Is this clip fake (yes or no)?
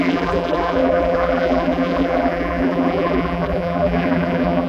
yes